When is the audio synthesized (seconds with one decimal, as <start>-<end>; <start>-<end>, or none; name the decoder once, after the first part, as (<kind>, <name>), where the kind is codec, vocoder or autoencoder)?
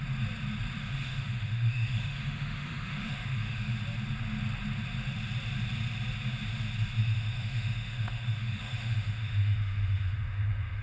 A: 0.8-3.7 (autoencoder, DAC-VAE); 7.0-10.8